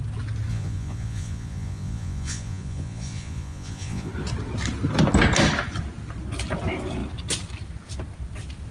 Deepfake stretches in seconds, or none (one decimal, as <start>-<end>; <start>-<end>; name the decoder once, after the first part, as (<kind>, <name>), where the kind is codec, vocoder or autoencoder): 0.5-4.1 (vocoder, Vocos)